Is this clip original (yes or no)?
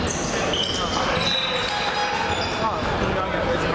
yes